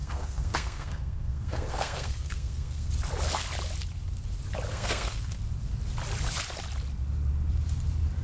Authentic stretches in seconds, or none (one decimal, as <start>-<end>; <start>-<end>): 2.9-4.7; 5.4-8.2